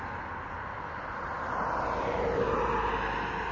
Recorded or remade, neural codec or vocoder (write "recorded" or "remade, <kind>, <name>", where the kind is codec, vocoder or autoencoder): recorded